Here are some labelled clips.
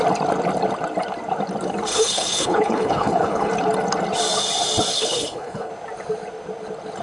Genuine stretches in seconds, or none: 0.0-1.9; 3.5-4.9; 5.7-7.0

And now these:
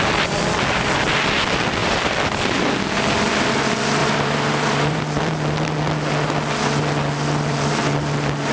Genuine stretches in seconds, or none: 0.0-1.8; 2.4-4.0; 5.0-8.5

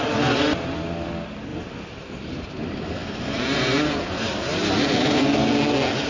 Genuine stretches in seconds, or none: 0.0-1.5; 5.2-6.1

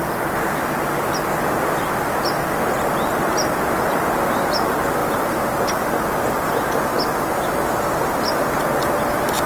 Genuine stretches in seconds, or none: 0.0-5.0; 5.7-9.5